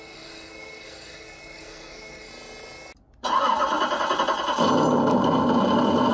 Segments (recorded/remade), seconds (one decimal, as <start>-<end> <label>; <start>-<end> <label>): 0.0-2.3 remade; 2.3-6.1 recorded